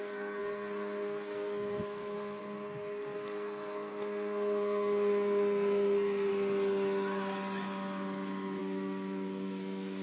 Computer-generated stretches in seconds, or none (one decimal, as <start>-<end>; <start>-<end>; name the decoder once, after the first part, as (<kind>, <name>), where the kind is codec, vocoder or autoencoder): 0.0-6.3 (codec, SNAC); 8.6-10.0